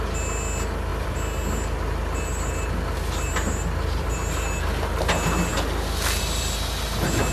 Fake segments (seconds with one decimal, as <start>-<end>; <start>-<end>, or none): none